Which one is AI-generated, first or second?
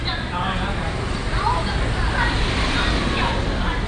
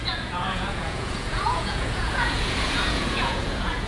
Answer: second